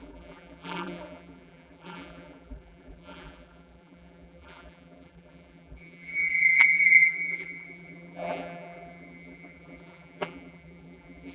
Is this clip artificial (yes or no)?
yes